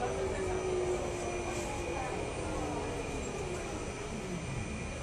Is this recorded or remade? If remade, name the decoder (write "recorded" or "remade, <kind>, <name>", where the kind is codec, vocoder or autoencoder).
recorded